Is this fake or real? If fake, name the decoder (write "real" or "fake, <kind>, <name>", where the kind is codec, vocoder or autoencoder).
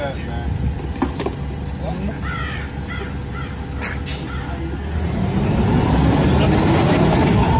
real